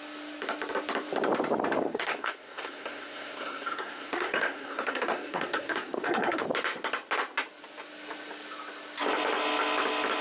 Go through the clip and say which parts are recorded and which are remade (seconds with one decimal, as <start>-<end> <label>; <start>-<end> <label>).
0.0-1.8 recorded; 1.8-6.4 remade; 6.4-10.2 recorded